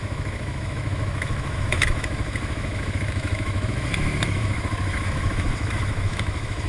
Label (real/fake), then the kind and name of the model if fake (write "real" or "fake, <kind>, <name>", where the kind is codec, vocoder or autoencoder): fake, autoencoder, DAC-VAE